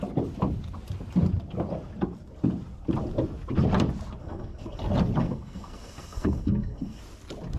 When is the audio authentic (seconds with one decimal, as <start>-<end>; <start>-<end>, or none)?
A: 0.0-4.2; 4.8-5.2; 7.0-7.6